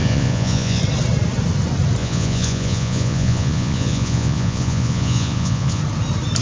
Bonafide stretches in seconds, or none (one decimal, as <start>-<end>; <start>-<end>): 0.8-2.0; 5.8-6.4